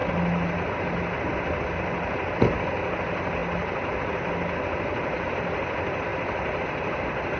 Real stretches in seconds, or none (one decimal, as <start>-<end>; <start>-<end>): 0.0-7.4